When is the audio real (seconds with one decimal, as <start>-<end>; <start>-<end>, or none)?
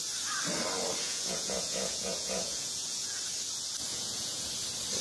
0.0-1.0; 3.2-3.9; 4.5-5.0